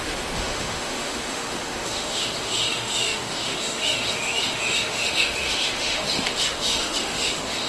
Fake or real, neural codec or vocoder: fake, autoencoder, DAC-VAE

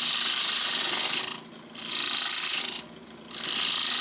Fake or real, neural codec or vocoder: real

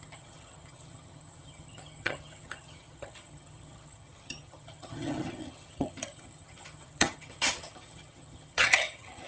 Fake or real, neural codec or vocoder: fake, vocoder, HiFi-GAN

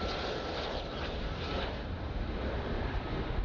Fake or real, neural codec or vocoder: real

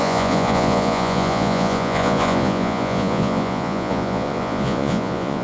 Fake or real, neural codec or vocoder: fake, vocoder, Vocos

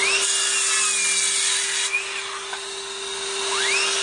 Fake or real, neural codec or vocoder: real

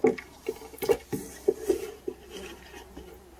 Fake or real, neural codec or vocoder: real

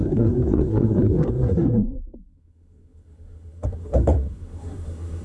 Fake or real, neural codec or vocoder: fake, codec, SNAC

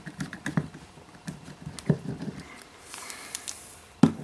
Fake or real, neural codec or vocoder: real